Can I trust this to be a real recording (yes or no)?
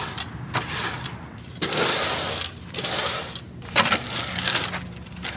yes